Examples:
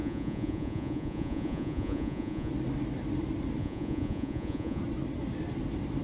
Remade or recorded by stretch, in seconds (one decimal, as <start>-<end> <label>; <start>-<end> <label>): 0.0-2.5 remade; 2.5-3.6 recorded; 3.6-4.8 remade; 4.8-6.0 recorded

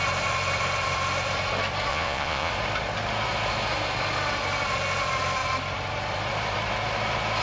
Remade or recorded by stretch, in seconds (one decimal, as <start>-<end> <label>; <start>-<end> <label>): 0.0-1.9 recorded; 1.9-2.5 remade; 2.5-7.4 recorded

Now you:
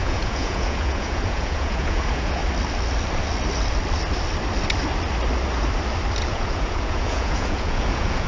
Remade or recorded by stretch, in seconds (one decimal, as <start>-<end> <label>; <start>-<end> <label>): 0.0-2.4 remade; 2.4-6.3 recorded; 6.3-8.3 remade